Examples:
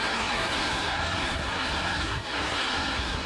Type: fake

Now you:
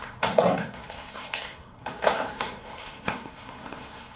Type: fake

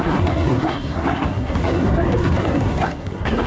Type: fake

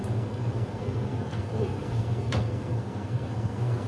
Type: fake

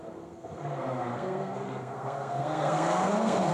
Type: fake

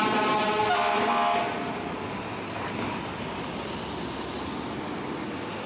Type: real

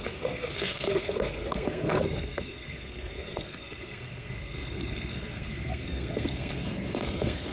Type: fake